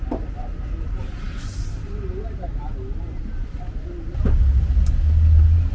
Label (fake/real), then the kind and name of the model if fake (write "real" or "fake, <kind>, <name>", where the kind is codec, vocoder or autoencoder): real